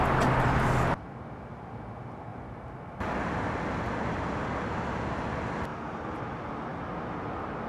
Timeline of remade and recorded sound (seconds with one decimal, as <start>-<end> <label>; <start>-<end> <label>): 0.0-2.3 recorded; 2.3-4.4 remade; 4.4-5.7 recorded; 5.7-6.2 remade; 6.2-7.7 recorded